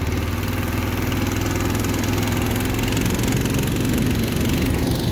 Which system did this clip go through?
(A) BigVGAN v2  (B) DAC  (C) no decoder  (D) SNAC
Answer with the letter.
C